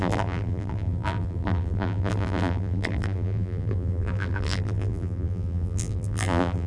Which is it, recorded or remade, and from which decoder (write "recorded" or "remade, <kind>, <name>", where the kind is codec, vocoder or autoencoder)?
remade, vocoder, BigVGAN v2